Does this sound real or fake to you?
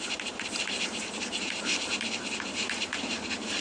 fake